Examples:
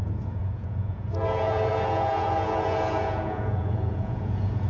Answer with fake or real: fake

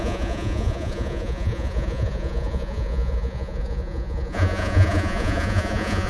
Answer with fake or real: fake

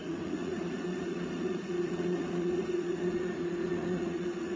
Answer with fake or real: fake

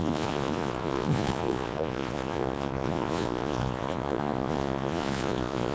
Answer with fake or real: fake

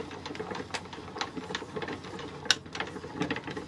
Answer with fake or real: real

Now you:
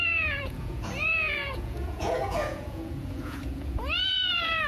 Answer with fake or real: fake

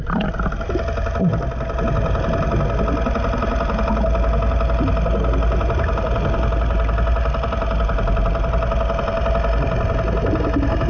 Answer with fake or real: real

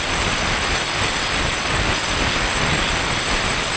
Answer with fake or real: real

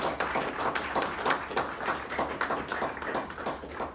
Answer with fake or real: real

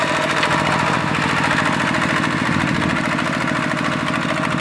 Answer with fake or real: real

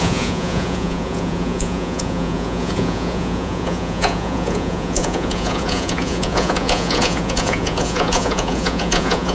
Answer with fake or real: fake